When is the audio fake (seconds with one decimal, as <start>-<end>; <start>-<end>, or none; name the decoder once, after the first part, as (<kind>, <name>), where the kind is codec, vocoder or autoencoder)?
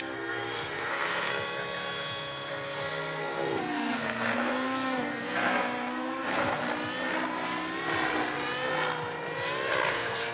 0.0-1.3 (codec, SNAC); 2.5-6.6; 9.9-10.3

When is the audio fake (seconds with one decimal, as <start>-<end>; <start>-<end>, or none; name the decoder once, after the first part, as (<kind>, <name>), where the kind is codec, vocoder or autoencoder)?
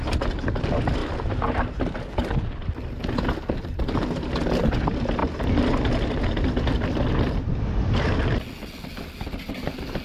none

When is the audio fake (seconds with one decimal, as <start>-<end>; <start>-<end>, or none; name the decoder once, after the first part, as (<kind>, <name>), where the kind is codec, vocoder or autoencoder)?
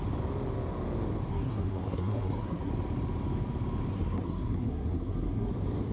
1.3-2.7 (codec, SNAC); 3.9-5.5